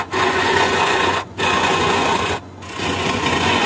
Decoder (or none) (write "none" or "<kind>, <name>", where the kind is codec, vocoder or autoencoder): vocoder, Vocos